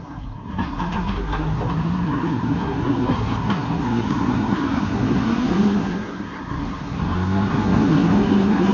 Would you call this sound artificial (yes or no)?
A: yes